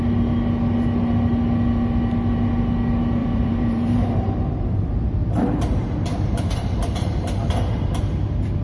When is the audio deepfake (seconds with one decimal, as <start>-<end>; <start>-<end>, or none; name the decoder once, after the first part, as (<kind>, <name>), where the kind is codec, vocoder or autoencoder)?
3.2-8.0 (vocoder, BigVGAN v2)